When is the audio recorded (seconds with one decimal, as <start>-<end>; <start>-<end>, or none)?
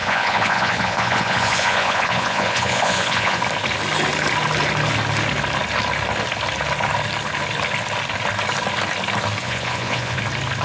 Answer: 3.4-9.4; 10.2-10.6